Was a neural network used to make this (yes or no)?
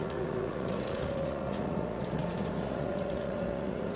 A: yes